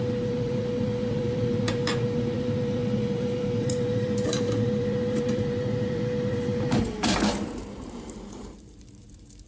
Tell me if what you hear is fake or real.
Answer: fake